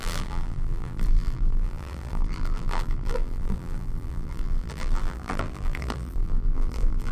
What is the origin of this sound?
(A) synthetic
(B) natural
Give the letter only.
A